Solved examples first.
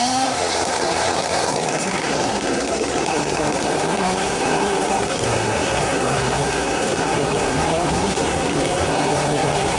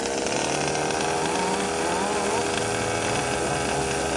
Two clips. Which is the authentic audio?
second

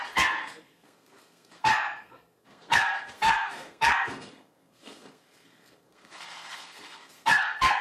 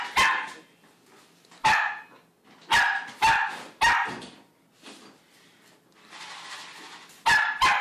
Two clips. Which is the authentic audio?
second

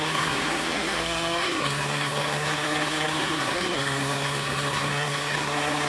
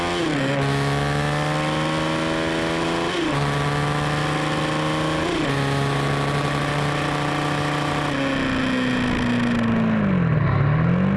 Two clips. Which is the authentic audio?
second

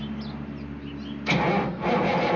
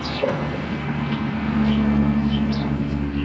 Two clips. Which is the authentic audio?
first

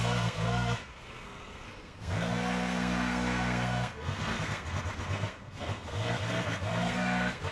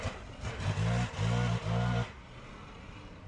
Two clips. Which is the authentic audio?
second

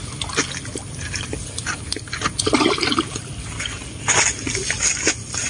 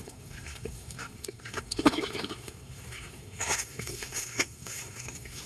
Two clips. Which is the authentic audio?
first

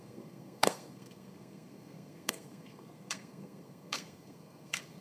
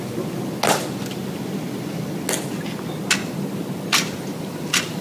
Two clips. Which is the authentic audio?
second